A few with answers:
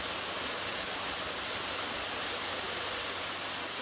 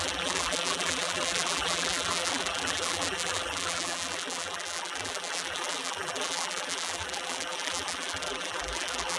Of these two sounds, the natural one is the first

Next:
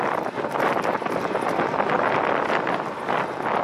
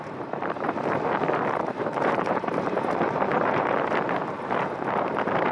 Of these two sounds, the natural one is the first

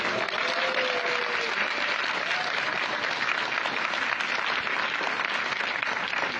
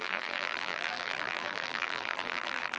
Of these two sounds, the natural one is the first